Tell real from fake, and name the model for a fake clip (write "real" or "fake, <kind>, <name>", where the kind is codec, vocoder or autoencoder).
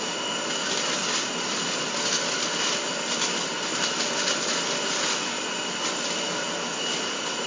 real